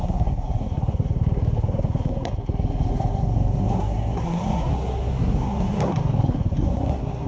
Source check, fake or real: fake